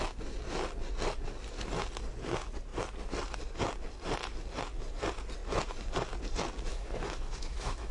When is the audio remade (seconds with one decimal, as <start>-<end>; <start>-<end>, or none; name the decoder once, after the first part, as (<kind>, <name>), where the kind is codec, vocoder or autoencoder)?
6.7-7.9 (autoencoder, DAC-VAE)